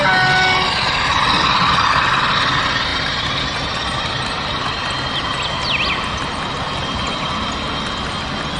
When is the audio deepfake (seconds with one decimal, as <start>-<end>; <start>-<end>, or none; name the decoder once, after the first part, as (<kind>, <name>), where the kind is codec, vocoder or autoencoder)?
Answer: 2.9-5.1 (vocoder, BigVGAN v2)